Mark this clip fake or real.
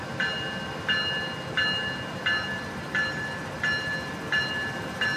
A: real